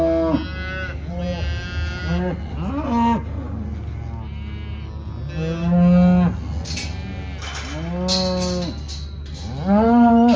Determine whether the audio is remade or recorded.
recorded